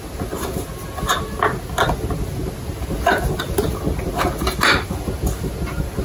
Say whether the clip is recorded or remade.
recorded